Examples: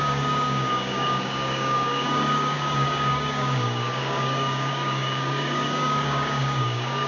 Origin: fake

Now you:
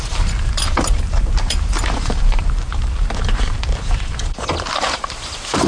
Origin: fake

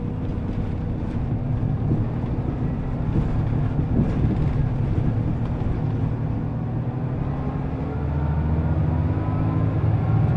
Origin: real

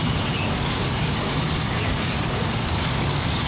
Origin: fake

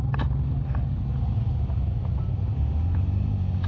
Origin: real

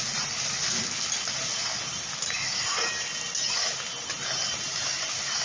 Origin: real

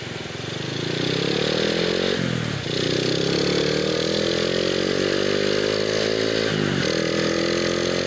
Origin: real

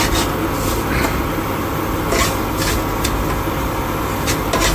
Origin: real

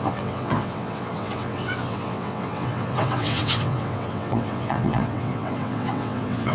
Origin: fake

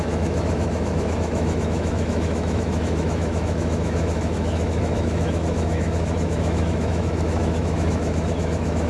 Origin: fake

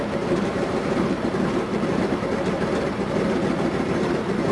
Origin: fake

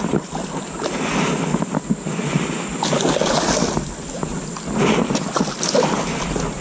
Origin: real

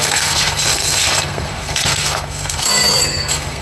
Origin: fake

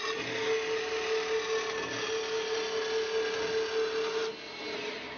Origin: real